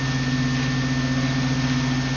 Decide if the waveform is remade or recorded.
recorded